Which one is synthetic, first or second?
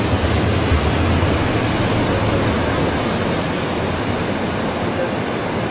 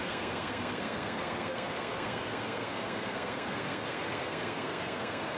second